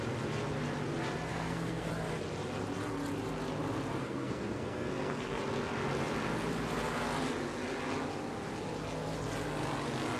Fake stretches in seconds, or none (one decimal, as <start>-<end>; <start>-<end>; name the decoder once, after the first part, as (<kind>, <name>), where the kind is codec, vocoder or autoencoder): 1.3-1.9 (codec, SNAC); 4.0-5.4